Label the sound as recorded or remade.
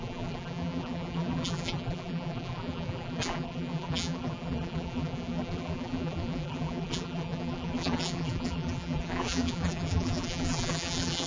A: remade